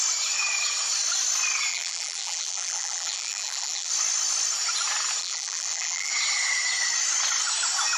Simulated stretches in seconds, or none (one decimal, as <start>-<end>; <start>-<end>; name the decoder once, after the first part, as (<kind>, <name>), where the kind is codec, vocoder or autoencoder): 1.7-3.9 (vocoder, BigVGAN v2); 5.2-6.1